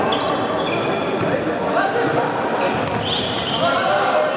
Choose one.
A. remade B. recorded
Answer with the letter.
B